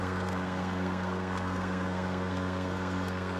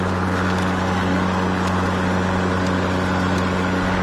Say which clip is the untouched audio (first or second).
second